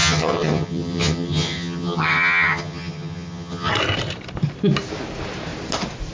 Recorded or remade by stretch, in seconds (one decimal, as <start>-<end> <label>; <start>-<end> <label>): 0.0-3.7 remade; 3.7-6.1 recorded